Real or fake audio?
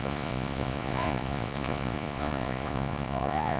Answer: fake